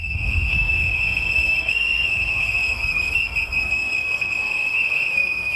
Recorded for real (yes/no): no